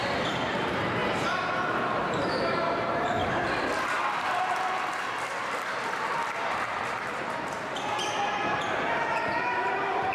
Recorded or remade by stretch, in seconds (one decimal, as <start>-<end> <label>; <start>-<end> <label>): 0.0-1.0 remade; 1.0-1.7 recorded; 1.7-3.2 remade; 3.2-6.9 recorded; 6.9-10.1 remade

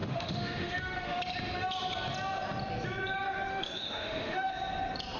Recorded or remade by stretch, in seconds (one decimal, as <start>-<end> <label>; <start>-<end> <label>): 0.0-1.2 remade; 1.2-3.5 recorded; 3.5-4.5 remade; 4.5-5.2 recorded

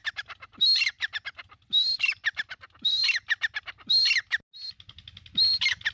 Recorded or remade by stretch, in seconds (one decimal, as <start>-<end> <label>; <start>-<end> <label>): 0.0-2.6 remade; 2.6-5.9 recorded

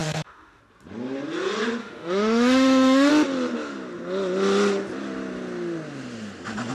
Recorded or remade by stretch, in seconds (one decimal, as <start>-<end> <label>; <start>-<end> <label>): 0.0-0.6 remade; 0.6-1.8 recorded; 1.8-3.1 remade; 3.1-6.7 recorded

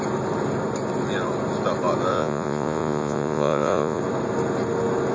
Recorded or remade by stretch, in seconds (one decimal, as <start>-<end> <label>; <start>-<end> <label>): 0.0-2.1 recorded; 2.1-4.0 remade; 4.0-5.1 recorded

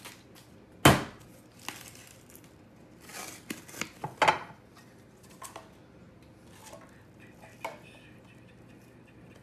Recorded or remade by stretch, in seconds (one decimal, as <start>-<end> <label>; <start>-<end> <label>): 0.0-9.4 recorded

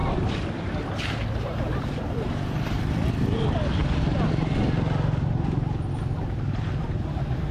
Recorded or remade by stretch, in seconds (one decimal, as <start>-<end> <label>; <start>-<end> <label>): 0.0-3.8 remade; 3.8-7.5 recorded